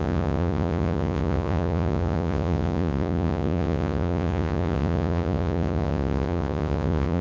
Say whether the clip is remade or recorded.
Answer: remade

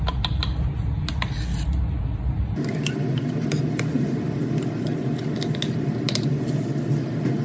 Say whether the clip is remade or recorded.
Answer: recorded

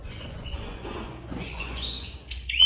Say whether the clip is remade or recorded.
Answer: remade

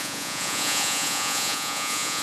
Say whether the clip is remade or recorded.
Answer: remade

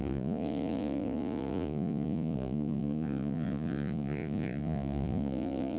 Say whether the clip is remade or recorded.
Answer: remade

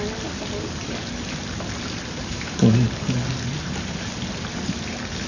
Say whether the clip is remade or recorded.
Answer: recorded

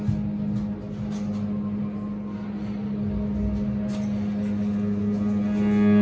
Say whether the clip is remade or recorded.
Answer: recorded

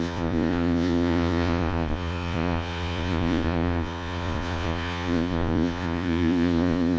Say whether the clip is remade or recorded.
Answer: remade